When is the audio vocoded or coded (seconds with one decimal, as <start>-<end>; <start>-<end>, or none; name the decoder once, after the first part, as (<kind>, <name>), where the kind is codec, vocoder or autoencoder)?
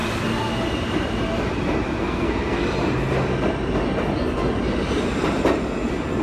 2.0-2.6 (codec, SNAC)